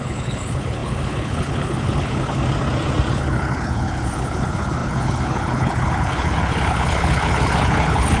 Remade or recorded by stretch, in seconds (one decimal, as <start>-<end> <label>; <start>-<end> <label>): 0.0-2.4 remade; 2.4-3.1 recorded; 3.1-8.2 remade